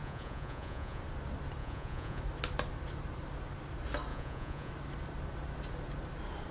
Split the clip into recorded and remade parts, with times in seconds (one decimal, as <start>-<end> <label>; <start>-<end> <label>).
0.0-1.0 remade; 1.0-1.6 recorded; 1.6-2.2 remade; 2.2-4.1 recorded; 4.1-4.7 remade; 4.7-6.5 recorded